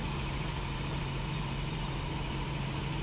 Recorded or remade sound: recorded